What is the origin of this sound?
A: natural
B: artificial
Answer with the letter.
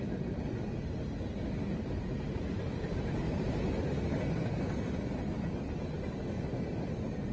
A